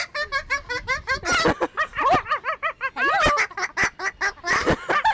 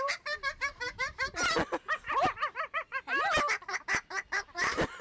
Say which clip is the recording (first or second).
first